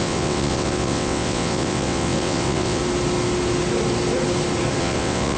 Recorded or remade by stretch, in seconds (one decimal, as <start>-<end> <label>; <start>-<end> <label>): 0.0-2.8 remade; 2.8-4.8 recorded; 4.8-5.4 remade